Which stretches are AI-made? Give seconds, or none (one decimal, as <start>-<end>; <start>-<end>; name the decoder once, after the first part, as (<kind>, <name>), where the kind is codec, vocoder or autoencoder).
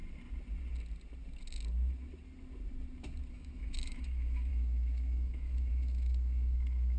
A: 3.3-7.0 (autoencoder, DAC-VAE)